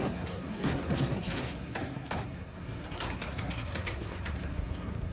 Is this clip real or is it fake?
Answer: fake